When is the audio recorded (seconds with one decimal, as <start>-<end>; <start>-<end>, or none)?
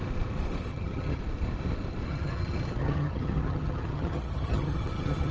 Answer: 0.0-0.7; 1.2-2.1